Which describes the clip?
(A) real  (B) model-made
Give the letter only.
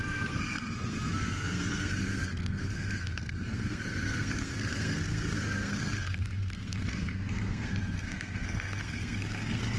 B